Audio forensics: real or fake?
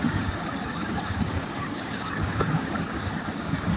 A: fake